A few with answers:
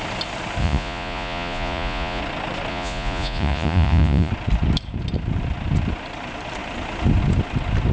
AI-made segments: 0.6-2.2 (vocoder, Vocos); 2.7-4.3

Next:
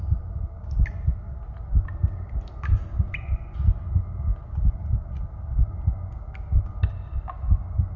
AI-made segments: none

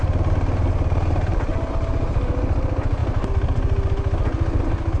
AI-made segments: none